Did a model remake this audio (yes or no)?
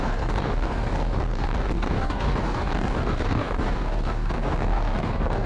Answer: yes